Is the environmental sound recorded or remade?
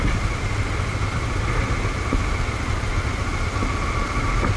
recorded